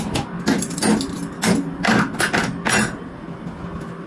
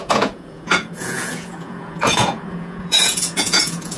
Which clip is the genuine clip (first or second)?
first